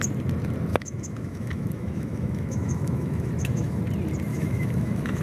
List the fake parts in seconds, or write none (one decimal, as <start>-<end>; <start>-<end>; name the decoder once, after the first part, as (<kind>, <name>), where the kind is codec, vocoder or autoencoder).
0.7-3.8 (autoencoder, DAC-VAE); 4.3-5.2